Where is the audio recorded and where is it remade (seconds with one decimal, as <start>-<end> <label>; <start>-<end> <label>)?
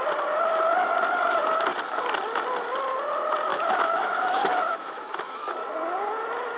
0.0-3.5 recorded; 3.5-5.5 remade; 5.5-6.6 recorded